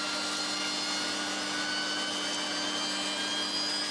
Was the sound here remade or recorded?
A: recorded